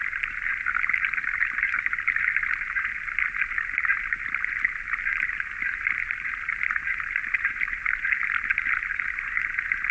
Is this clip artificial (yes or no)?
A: no